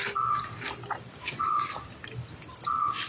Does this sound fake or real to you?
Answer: real